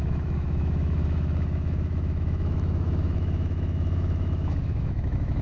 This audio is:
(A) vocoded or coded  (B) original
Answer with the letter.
A